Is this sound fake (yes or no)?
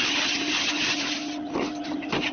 no